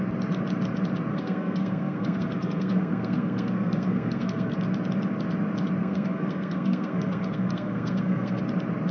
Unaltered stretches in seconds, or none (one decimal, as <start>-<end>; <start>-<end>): 0.0-1.1; 4.5-5.8; 8.4-8.9